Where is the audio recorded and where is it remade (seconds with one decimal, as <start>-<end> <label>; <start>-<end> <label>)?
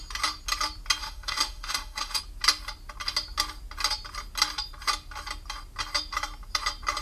0.0-1.0 recorded; 1.0-2.2 remade; 2.2-7.0 recorded